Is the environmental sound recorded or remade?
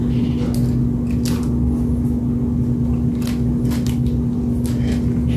recorded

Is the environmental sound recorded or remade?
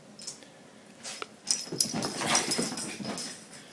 recorded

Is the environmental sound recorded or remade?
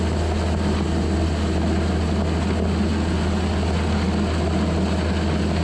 recorded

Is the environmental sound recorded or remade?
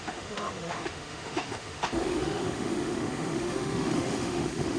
remade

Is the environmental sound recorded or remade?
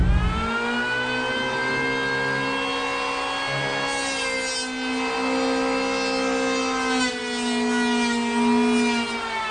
recorded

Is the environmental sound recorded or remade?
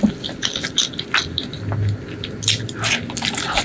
recorded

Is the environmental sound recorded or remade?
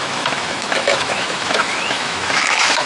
remade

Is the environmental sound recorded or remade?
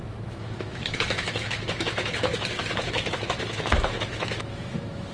remade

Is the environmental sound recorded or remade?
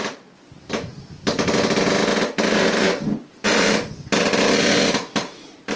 recorded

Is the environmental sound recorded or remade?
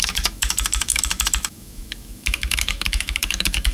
remade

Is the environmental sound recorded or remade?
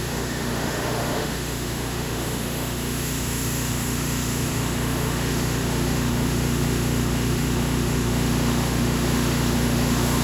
remade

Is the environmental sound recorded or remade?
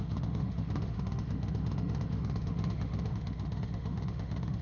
remade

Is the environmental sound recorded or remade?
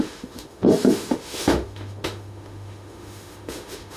remade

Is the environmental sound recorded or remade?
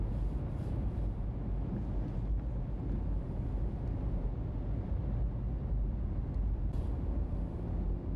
recorded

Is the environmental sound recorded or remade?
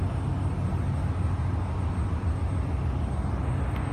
recorded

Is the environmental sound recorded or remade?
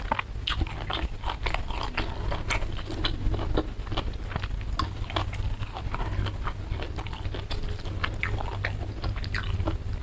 recorded